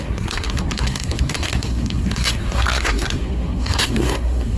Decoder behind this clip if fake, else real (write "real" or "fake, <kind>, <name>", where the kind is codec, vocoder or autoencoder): fake, codec, SNAC